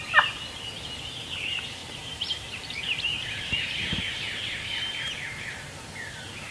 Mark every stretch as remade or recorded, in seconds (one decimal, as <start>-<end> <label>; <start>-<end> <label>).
0.0-1.8 recorded; 1.8-5.7 remade; 5.7-6.5 recorded